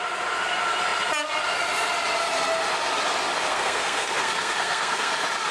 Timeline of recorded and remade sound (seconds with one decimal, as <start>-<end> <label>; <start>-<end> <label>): 0.0-3.5 recorded; 3.5-5.1 remade; 5.1-5.5 recorded